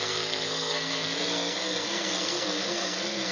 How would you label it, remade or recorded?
remade